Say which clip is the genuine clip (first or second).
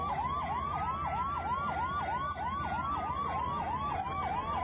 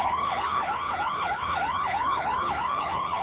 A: first